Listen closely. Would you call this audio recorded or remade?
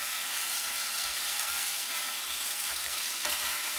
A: remade